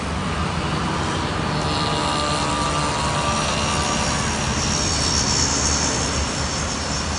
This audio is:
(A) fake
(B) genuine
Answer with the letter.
B